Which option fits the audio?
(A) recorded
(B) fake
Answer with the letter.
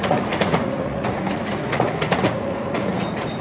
B